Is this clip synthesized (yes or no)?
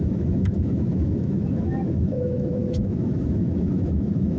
yes